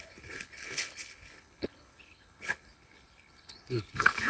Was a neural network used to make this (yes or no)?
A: yes